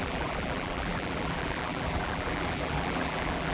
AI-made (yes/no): yes